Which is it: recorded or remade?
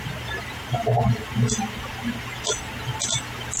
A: recorded